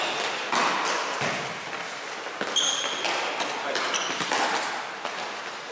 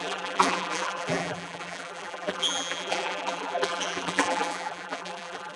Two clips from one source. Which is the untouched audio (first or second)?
first